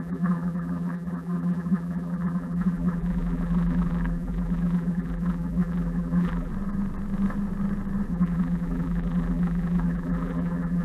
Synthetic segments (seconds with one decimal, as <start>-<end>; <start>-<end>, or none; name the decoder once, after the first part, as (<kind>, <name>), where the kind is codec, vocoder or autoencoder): 0.0-6.5 (vocoder, BigVGAN v2); 8.1-10.8

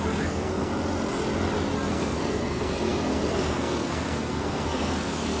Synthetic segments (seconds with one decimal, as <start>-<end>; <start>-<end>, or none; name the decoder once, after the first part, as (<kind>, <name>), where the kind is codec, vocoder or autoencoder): 0.0-0.7 (codec, SNAC); 1.9-5.4

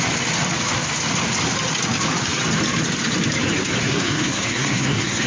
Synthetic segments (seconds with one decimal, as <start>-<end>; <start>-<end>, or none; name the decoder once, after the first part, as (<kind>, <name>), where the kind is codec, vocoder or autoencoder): 3.8-5.3 (codec, SNAC)

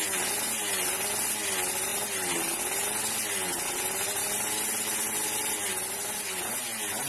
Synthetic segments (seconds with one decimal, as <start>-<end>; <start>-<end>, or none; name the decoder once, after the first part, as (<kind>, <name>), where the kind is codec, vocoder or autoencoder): none